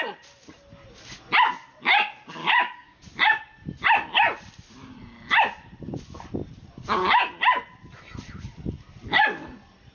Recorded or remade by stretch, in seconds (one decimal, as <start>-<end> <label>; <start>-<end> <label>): 0.0-2.4 recorded; 2.4-3.0 remade; 3.0-9.9 recorded